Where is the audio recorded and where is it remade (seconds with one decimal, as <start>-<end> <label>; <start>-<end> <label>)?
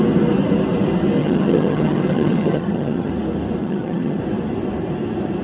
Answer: 0.0-1.2 recorded; 1.2-3.1 remade; 3.1-3.6 recorded; 3.6-4.2 remade; 4.2-5.4 recorded